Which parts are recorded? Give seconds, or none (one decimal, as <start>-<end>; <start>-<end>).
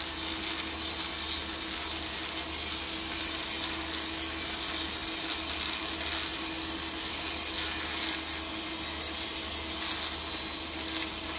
0.0-11.4